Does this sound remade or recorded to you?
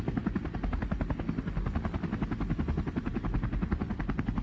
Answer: recorded